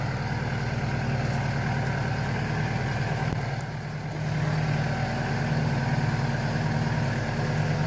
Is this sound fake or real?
real